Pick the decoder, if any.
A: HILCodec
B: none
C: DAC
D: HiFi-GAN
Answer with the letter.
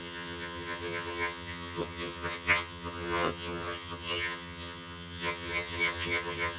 D